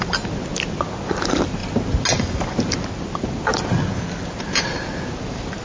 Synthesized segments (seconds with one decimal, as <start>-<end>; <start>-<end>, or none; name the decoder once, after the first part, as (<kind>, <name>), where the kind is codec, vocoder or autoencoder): none